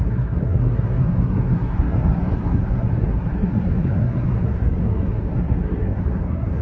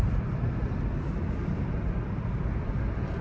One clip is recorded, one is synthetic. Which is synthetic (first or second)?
first